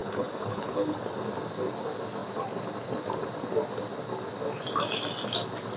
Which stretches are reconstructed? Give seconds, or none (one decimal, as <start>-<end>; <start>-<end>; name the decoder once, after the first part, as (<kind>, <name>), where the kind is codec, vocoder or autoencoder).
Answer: 0.0-1.0 (codec, HILCodec)